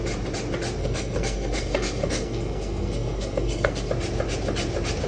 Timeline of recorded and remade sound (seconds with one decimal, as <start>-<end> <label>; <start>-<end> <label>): 0.0-0.8 recorded; 0.8-3.9 remade; 3.9-5.1 recorded